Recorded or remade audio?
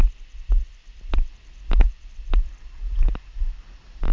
recorded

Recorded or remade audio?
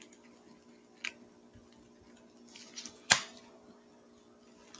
recorded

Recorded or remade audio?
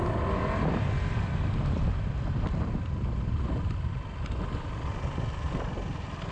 remade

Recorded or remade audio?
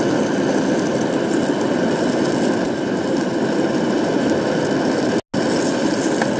recorded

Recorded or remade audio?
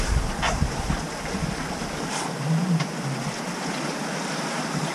recorded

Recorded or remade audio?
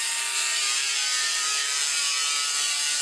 remade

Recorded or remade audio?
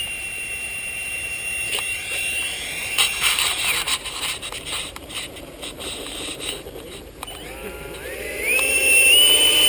remade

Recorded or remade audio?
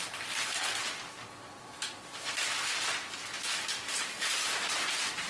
recorded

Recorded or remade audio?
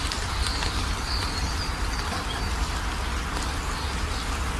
recorded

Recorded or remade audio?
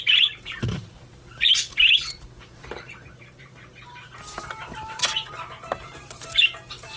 remade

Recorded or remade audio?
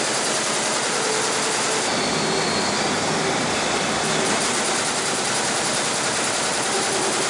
remade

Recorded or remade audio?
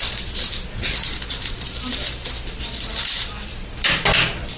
remade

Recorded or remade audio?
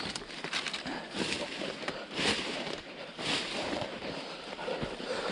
remade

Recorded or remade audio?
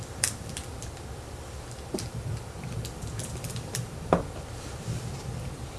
remade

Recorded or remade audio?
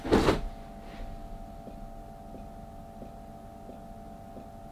recorded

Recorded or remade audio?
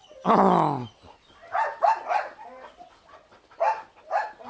recorded